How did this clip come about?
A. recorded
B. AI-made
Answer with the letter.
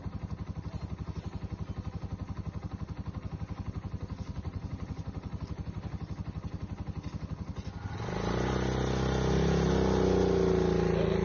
A